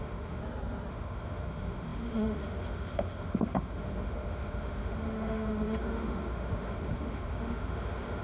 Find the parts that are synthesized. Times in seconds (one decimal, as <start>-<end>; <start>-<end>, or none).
0.0-0.4; 0.9-8.2